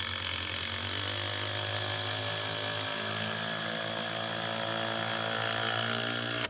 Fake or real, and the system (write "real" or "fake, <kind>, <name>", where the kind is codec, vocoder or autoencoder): real